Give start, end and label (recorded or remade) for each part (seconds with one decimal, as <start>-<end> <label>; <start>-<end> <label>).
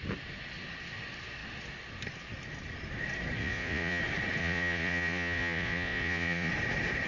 0.0-3.4 recorded; 3.4-4.0 remade; 4.0-4.4 recorded; 4.4-6.5 remade; 6.5-7.1 recorded